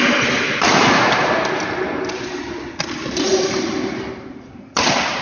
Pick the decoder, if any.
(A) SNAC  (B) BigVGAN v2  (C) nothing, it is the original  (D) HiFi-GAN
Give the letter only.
C